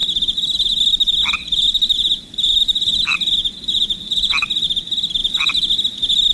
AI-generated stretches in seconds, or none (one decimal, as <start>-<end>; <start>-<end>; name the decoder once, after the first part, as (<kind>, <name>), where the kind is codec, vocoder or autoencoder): none